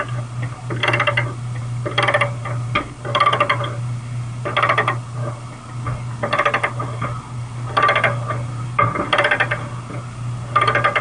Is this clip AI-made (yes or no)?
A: no